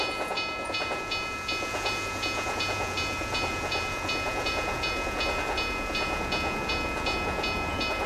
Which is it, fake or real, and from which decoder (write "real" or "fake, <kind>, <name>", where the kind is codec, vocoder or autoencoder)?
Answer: fake, vocoder, Vocos